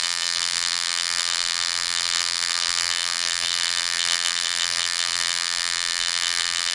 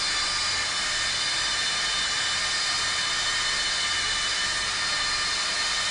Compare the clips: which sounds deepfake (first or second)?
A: first